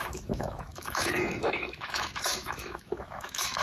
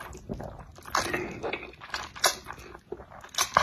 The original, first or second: second